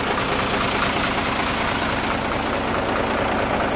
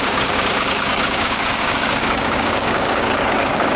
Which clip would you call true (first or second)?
first